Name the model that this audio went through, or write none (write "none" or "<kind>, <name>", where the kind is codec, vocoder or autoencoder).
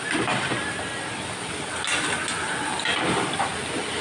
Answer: none